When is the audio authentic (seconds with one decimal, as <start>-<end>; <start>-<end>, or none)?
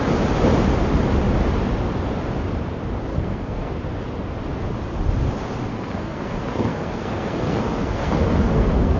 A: 0.0-3.1; 3.7-5.7